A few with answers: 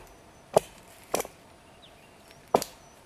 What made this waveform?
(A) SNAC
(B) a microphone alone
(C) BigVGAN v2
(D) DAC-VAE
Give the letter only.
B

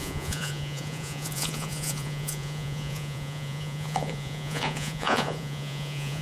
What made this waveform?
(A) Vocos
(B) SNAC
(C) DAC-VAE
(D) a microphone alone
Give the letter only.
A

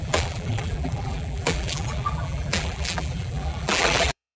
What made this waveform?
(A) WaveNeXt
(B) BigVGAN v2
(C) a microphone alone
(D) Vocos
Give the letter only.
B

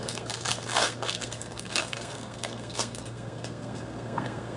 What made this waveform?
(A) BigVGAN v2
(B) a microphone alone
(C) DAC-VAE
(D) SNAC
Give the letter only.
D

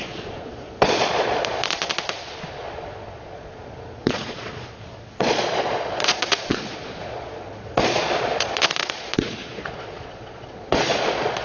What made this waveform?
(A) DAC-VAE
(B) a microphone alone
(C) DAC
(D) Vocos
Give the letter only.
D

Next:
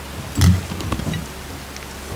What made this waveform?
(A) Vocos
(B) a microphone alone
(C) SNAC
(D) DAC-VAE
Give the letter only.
B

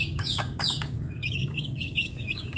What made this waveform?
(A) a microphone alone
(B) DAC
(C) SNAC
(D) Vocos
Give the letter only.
B